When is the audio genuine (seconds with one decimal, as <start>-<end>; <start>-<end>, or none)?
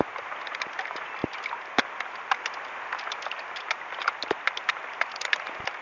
0.0-5.8